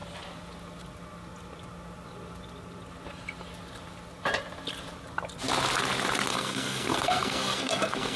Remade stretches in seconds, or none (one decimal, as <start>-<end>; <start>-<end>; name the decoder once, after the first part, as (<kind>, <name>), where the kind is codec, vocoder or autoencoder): 6.3-8.2 (codec, SNAC)